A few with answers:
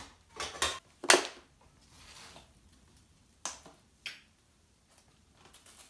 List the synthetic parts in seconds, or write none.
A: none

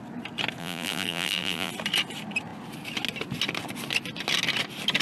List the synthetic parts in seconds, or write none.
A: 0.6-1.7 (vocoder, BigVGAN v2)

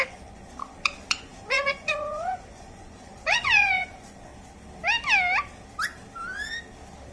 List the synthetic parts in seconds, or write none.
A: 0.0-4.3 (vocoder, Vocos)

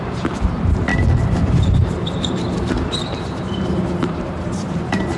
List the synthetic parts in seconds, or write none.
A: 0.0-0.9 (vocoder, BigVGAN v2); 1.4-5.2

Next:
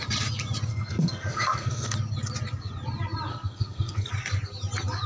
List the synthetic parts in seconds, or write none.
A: 0.7-1.9 (codec, SNAC); 3.3-4.1